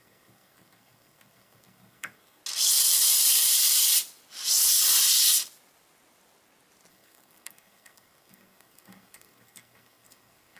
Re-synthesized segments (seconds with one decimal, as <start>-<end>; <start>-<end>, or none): 0.0-2.4; 6.9-10.6